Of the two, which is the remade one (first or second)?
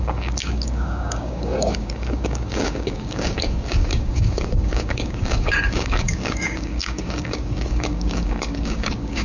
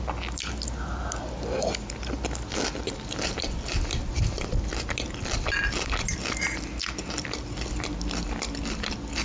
first